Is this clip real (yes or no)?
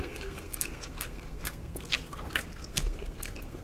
no